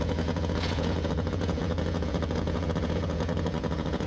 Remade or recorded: remade